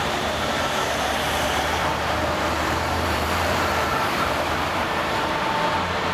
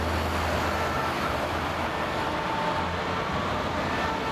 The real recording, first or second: second